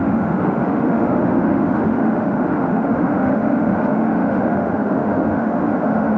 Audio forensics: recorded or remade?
remade